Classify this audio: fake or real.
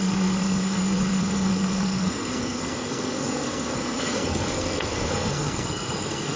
fake